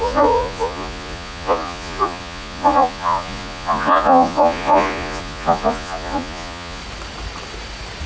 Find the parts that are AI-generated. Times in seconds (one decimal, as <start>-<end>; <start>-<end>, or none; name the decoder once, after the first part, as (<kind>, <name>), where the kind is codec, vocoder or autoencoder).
0.0-6.8 (vocoder, Vocos)